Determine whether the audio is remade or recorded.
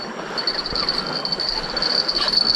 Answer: recorded